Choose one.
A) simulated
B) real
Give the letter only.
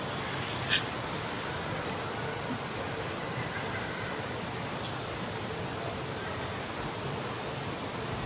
A